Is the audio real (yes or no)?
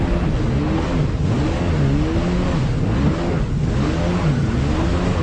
yes